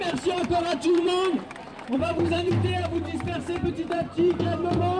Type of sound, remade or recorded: remade